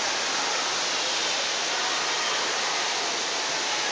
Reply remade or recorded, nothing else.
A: recorded